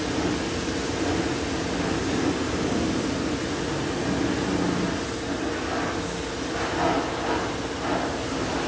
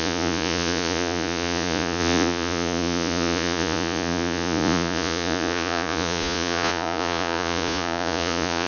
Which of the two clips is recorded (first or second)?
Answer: first